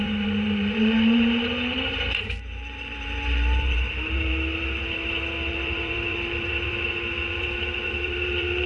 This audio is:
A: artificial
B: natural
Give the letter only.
A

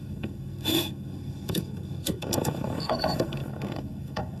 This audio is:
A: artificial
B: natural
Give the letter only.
A